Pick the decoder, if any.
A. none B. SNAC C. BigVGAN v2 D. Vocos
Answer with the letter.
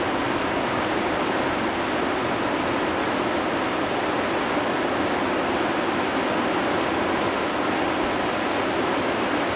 A